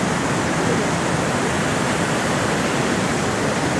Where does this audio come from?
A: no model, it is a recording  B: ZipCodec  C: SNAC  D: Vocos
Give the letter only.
A